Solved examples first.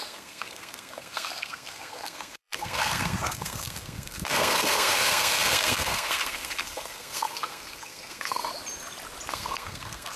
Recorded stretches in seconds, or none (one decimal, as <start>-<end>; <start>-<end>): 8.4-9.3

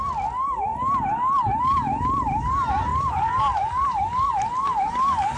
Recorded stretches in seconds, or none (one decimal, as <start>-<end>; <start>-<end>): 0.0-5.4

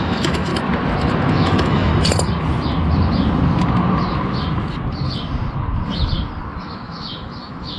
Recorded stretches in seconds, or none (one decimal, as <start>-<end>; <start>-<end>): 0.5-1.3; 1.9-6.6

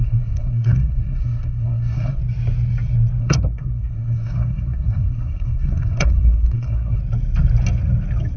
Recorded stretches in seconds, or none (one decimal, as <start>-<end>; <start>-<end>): 2.2-3.2; 7.0-8.4

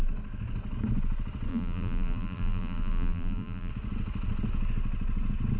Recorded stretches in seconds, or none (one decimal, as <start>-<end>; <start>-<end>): 0.0-1.5; 3.7-5.6